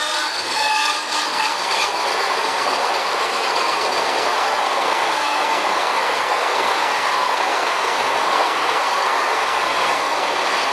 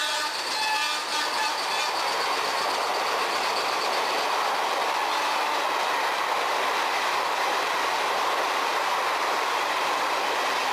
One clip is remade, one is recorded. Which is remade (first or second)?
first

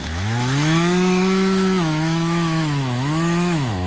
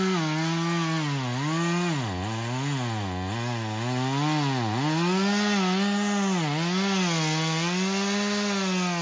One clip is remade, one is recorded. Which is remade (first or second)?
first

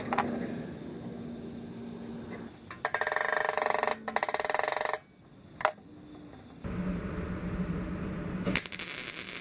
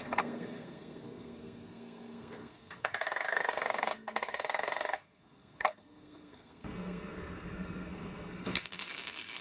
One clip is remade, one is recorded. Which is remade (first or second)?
second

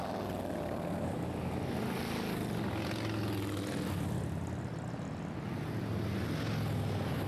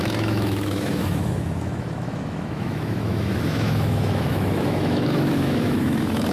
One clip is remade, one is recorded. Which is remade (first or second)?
second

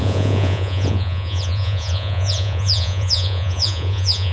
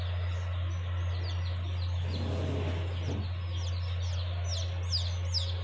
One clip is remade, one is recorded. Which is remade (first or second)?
first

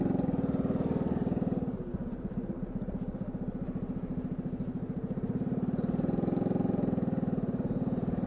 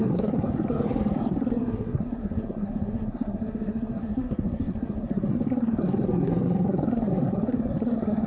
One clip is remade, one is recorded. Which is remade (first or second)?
second